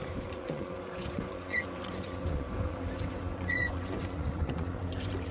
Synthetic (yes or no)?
yes